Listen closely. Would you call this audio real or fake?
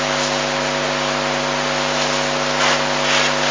real